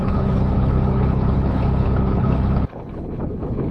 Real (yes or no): no